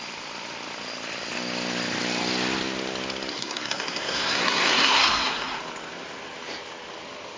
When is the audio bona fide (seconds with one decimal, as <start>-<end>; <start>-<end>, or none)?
0.0-3.3; 5.6-7.4